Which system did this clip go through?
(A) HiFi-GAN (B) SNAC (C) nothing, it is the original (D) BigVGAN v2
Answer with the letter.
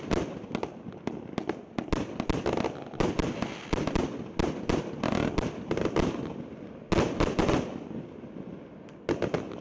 C